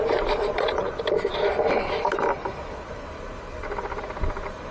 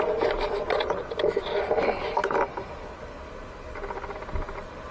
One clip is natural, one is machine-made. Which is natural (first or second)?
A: second